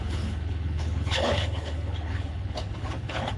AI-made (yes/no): yes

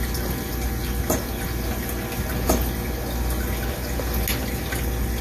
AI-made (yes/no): no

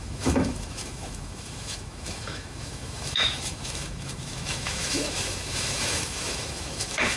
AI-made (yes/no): yes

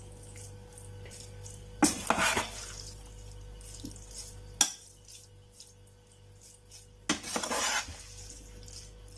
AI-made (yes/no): no